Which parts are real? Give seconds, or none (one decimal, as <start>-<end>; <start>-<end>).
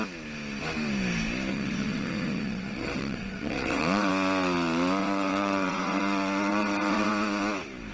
0.0-1.5; 4.1-5.0; 6.0-6.5; 7.1-7.9